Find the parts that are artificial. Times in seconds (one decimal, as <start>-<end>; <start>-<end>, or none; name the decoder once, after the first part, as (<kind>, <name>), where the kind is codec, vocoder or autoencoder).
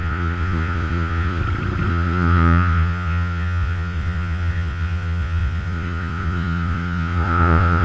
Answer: 0.0-1.4 (vocoder, Vocos); 1.9-7.8